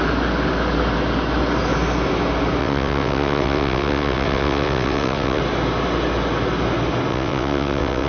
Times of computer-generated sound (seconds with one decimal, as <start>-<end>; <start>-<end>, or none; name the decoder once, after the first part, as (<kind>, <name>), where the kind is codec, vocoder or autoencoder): 2.6-5.4 (vocoder, WaveNeXt); 7.1-8.1